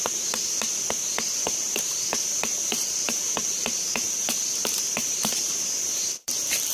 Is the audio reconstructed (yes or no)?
yes